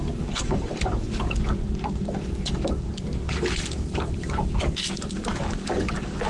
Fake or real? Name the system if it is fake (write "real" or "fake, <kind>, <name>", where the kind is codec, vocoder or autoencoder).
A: fake, codec, DAC